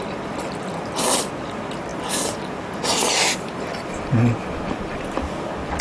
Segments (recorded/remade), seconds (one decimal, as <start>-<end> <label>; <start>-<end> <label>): 0.0-5.8 recorded